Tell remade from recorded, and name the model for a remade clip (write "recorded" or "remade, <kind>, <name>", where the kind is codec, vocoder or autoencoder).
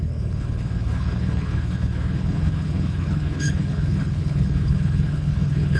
remade, codec, HILCodec